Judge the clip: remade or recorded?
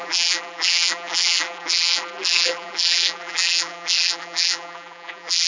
remade